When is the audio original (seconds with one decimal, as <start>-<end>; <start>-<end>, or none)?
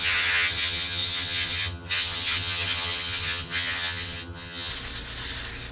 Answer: 4.7-5.7